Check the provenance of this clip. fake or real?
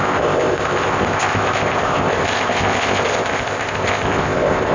fake